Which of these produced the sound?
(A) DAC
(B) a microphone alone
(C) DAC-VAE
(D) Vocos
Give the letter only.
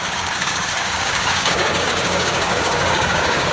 A